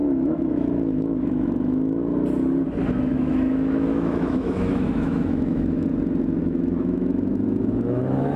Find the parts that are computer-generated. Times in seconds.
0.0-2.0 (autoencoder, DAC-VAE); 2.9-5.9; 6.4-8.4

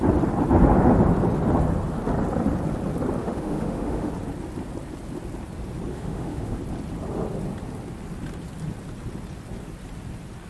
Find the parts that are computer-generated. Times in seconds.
3.2-4.1 (autoencoder, DAC-VAE); 5.9-6.6

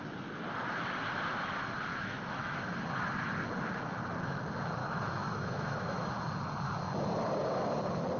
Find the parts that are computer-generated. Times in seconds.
1.9-2.6 (autoencoder, DAC-VAE); 4.8-6.1

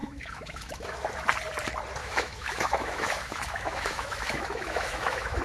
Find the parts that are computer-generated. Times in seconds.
0.0-1.1 (autoencoder, DAC-VAE); 2.0-5.4

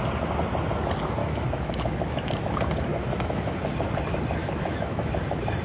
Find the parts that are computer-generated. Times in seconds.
1.2-2.3 (autoencoder, DAC-VAE); 2.9-3.7; 4.4-5.1

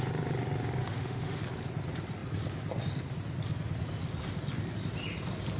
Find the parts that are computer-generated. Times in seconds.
0.8-1.4 (autoencoder, DAC-VAE)

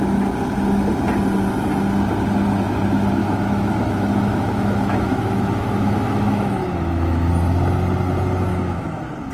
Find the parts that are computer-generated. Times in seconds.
3.2-7.3 (autoencoder, DAC-VAE); 8.5-9.3